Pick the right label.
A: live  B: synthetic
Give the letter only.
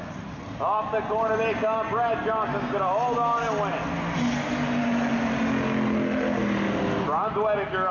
A